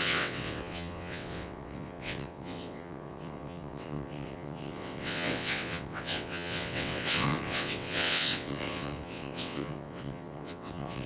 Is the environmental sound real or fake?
fake